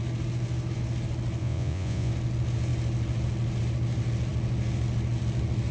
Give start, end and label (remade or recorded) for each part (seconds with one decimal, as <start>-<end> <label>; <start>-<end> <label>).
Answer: 0.0-1.4 recorded; 1.4-2.1 remade; 2.1-5.7 recorded